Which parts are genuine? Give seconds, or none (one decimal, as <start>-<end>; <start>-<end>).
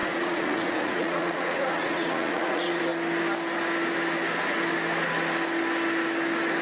2.8-6.6